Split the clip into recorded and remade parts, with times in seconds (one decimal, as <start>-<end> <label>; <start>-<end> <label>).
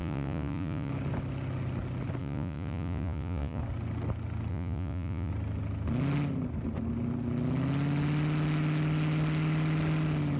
0.0-0.9 remade; 0.9-2.2 recorded; 2.2-3.6 remade; 3.6-4.5 recorded; 4.5-5.3 remade; 5.3-10.4 recorded